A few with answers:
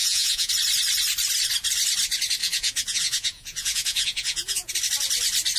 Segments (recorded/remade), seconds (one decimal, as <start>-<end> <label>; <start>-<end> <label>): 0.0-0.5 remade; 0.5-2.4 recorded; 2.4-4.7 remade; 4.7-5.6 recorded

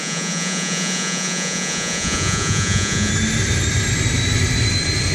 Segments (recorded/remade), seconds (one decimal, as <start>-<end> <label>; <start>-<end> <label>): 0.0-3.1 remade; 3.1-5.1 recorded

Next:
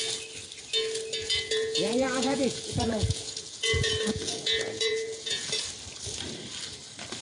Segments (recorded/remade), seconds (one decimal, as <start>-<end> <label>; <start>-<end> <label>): 0.0-1.2 recorded; 1.2-5.5 remade; 5.5-7.2 recorded

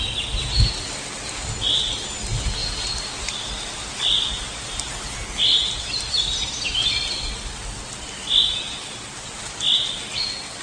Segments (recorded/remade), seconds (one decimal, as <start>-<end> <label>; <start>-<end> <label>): 0.0-10.6 recorded